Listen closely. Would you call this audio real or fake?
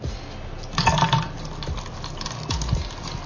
real